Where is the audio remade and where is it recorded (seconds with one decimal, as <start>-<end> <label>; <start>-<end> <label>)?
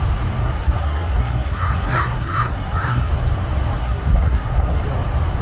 0.0-0.4 recorded; 0.4-3.1 remade; 3.1-3.8 recorded; 3.8-4.8 remade; 4.8-5.4 recorded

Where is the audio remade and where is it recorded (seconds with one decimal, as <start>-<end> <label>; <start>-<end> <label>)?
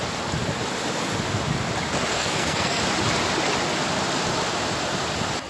0.0-2.1 recorded; 2.1-2.8 remade; 2.8-5.5 recorded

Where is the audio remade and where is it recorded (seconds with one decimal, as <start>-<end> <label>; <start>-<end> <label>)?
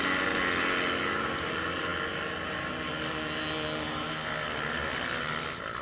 0.0-5.8 recorded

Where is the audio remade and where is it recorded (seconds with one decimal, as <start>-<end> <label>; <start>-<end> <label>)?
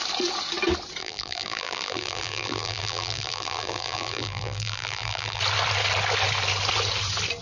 0.0-1.0 recorded; 1.0-5.4 remade; 5.4-7.4 recorded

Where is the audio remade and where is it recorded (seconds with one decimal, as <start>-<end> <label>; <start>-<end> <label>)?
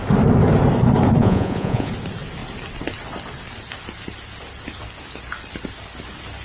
0.0-1.2 recorded; 1.2-1.9 remade; 1.9-6.4 recorded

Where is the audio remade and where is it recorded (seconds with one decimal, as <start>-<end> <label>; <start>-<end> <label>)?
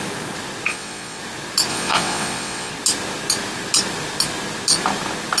0.0-0.7 recorded; 0.7-1.2 remade; 1.2-1.7 recorded; 1.7-2.7 remade; 2.7-5.4 recorded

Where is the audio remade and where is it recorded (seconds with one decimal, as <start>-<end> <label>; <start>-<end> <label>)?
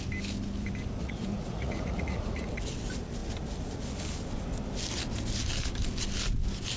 0.0-1.0 recorded; 1.0-2.5 remade; 2.5-6.8 recorded